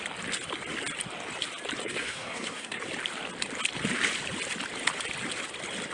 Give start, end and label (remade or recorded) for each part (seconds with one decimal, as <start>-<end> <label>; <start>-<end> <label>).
0.0-1.8 recorded; 1.8-2.8 remade; 2.8-5.9 recorded